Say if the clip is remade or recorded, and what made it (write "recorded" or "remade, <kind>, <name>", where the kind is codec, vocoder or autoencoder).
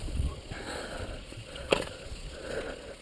remade, vocoder, Vocos